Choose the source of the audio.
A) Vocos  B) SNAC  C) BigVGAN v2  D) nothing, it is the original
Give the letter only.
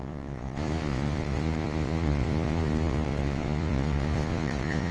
A